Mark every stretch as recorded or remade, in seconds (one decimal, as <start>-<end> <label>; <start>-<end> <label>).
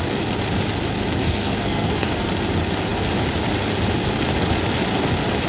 0.0-1.2 recorded; 1.2-2.3 remade; 2.3-5.5 recorded